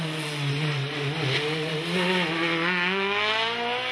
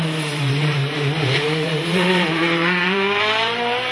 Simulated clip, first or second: second